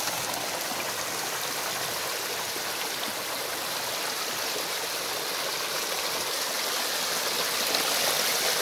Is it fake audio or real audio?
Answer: real